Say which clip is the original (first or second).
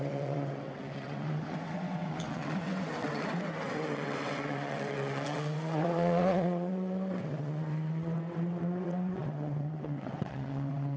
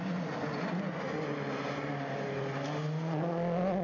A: second